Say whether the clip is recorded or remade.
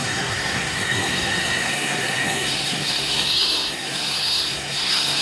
remade